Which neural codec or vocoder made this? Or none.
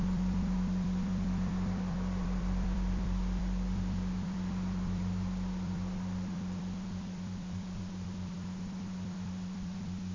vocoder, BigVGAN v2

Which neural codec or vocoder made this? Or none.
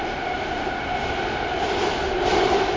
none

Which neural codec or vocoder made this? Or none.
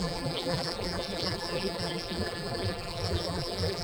vocoder, BigVGAN v2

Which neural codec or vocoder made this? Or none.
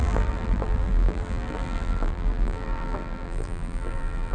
vocoder, BigVGAN v2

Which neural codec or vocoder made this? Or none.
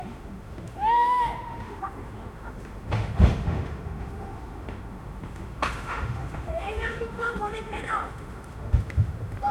autoencoder, DAC-VAE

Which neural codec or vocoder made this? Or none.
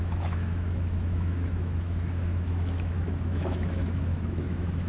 autoencoder, DAC-VAE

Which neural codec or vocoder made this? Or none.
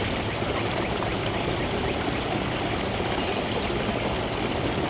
none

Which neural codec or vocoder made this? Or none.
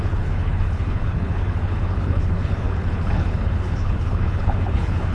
codec, HILCodec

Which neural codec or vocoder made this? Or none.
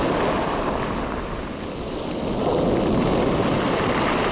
none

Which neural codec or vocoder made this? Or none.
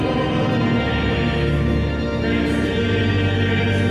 none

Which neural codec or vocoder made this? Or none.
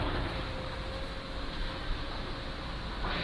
none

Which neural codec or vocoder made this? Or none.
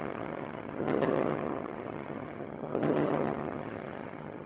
vocoder, HiFi-GAN